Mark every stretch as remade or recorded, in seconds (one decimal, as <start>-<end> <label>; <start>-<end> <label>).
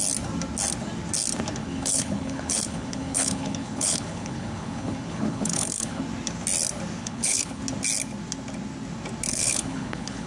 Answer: 0.0-1.6 recorded; 1.6-6.0 remade; 6.0-7.0 recorded; 7.0-7.6 remade; 7.6-9.3 recorded; 9.3-10.3 remade